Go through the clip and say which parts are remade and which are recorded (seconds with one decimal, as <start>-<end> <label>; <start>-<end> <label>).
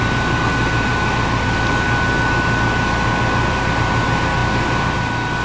0.0-5.4 recorded